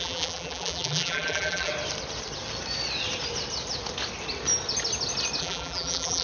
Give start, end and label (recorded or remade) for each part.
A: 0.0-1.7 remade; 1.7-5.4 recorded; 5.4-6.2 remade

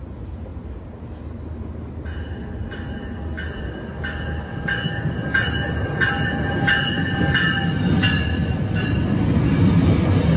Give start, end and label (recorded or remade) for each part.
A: 0.0-10.4 recorded